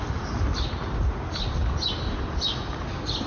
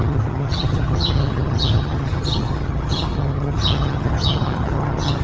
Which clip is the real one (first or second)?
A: first